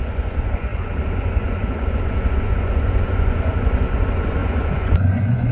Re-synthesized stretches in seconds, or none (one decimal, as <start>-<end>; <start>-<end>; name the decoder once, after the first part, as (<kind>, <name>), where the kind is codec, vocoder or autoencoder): 0.0-5.5 (vocoder, Vocos)